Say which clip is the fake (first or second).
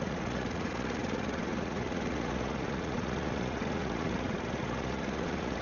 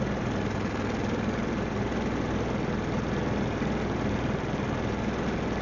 first